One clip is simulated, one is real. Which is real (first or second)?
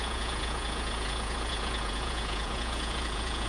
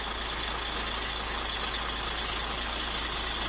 second